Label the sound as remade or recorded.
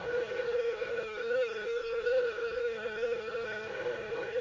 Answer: remade